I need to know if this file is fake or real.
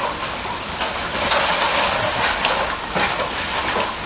real